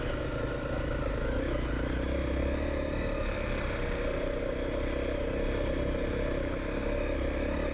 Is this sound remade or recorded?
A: recorded